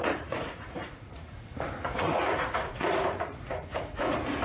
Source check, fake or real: fake